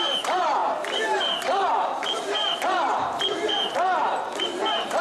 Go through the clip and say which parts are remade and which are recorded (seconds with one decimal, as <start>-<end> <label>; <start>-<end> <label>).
0.0-5.0 remade